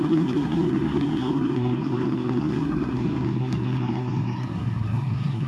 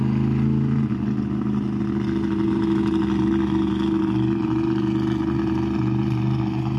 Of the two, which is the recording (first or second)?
second